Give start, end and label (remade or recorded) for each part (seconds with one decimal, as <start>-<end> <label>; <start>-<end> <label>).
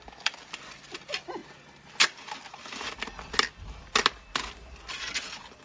0.0-5.6 recorded